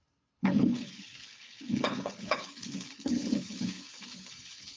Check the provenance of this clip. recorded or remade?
remade